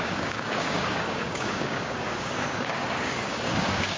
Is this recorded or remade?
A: remade